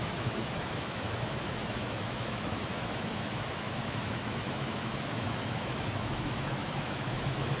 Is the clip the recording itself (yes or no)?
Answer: no